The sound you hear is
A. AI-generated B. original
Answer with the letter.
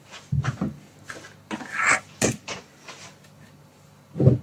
B